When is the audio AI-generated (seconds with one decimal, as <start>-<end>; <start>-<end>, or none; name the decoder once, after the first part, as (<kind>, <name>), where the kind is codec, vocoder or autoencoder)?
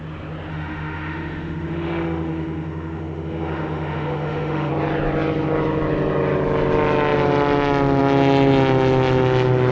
0.5-4.7 (autoencoder, DAC-VAE)